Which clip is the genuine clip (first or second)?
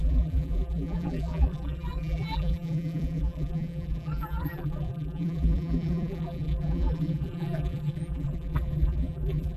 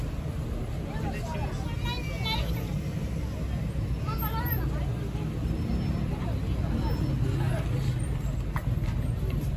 second